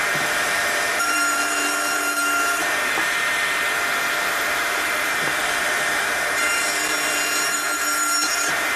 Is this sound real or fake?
fake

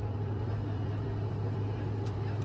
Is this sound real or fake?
fake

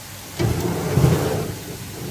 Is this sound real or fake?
real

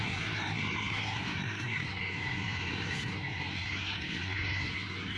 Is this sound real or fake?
fake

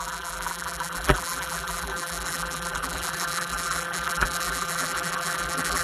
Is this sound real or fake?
fake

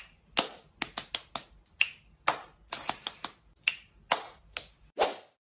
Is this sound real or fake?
real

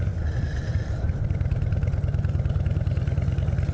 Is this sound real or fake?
real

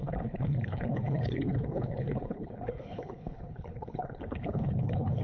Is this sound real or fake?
fake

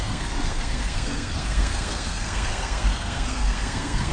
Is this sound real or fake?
fake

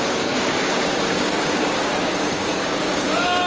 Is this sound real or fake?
fake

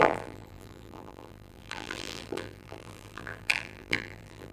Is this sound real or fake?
fake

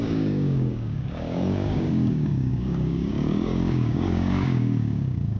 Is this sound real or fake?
fake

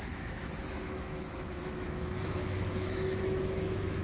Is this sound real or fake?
fake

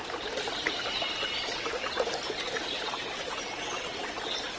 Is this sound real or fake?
real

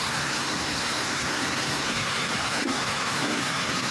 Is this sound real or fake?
fake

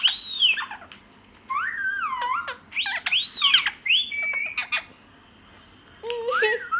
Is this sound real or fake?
real